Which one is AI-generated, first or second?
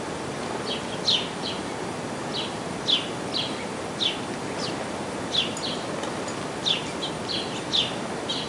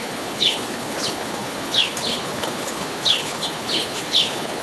second